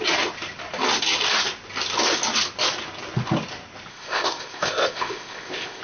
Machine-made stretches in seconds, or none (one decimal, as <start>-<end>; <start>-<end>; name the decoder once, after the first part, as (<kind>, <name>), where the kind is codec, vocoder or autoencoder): 3.9-5.8 (codec, ZipCodec)